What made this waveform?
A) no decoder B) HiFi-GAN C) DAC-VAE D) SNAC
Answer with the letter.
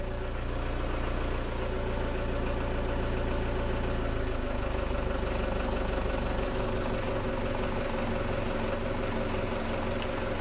A